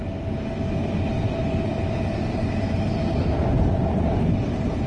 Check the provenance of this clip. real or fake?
real